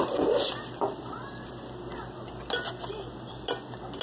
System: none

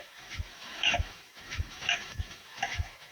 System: autoencoder, DAC-VAE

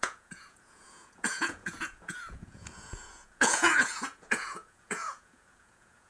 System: vocoder, Vocos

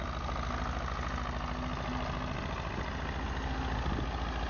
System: none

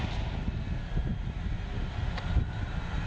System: none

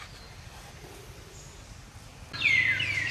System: vocoder, BigVGAN v2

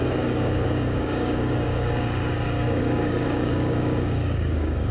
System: codec, DAC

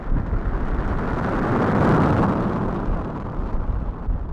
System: none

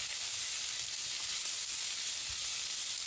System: none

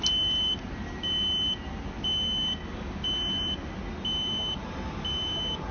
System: none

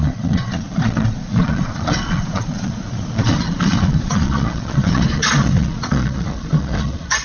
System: vocoder, Vocos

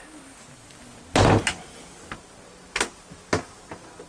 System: none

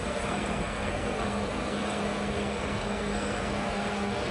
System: codec, SNAC